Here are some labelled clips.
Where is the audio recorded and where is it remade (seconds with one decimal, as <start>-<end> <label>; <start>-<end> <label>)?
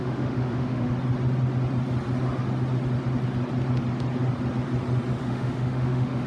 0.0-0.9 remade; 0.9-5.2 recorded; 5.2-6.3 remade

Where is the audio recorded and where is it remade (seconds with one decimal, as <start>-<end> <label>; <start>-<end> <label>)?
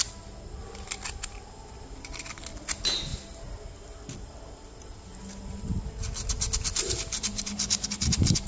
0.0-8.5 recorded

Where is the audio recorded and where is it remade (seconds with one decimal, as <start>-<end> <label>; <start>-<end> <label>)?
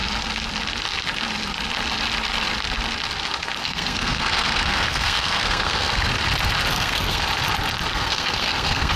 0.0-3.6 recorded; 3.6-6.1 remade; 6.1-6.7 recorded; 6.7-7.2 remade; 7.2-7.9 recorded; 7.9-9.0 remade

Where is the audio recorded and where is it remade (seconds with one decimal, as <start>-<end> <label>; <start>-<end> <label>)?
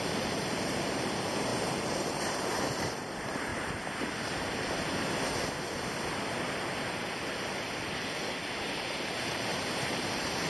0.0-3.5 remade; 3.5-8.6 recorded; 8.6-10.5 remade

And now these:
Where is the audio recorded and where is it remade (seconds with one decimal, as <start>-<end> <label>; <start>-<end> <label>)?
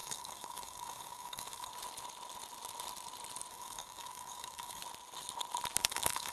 0.0-1.7 remade; 1.7-3.5 recorded; 3.5-4.8 remade; 4.8-5.8 recorded; 5.8-6.3 remade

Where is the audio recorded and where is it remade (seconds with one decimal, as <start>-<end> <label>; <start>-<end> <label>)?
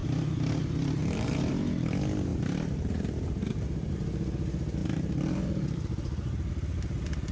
0.0-0.6 remade; 0.6-1.0 recorded; 1.0-1.5 remade; 1.5-2.3 recorded; 2.3-3.9 remade; 3.9-4.8 recorded; 4.8-6.5 remade; 6.5-7.3 recorded